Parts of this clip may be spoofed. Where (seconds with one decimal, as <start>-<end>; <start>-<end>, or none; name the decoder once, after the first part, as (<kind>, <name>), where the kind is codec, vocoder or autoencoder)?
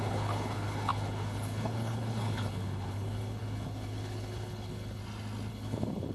0.0-5.0 (codec, HILCodec); 5.5-6.1